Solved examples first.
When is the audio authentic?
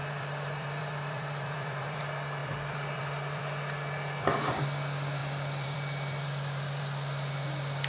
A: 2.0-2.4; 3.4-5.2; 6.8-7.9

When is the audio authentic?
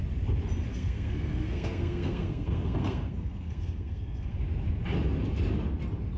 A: 0.0-0.7; 4.4-6.2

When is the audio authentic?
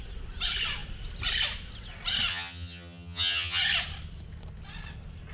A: 0.0-2.3; 3.6-5.3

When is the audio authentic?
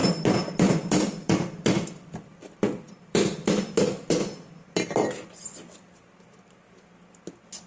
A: 3.6-4.6; 5.3-7.7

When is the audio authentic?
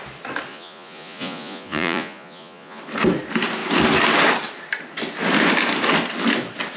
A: 0.0-0.5; 2.8-6.8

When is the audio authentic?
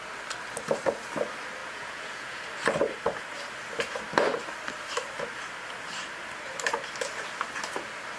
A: 0.0-1.6; 2.4-8.2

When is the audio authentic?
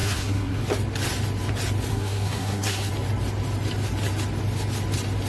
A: 0.6-1.9; 2.9-5.3